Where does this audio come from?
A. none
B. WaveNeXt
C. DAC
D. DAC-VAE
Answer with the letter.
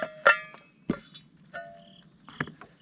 A